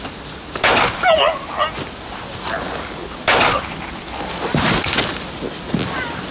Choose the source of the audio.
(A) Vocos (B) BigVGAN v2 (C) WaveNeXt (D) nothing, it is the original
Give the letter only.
D